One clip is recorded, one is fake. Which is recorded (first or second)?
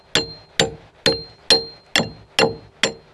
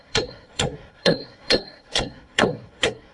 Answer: first